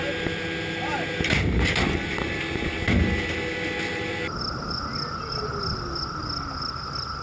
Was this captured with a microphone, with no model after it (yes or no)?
yes